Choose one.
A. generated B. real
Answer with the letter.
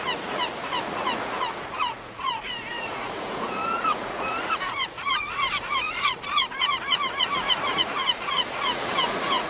A